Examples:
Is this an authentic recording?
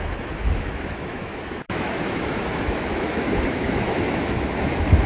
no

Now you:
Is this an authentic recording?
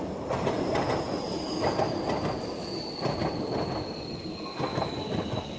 yes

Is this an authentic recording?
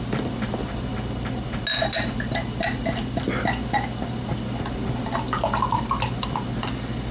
yes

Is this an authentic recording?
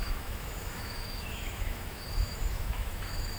no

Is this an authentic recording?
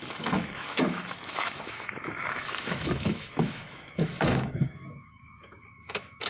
no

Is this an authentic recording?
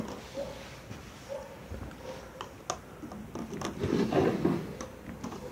yes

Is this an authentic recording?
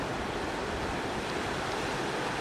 yes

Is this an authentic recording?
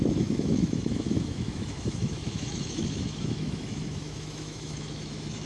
no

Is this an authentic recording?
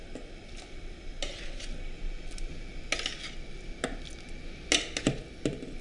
yes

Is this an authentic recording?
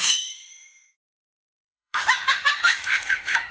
no